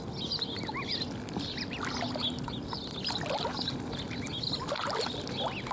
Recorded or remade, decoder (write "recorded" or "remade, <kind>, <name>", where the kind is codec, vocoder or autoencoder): recorded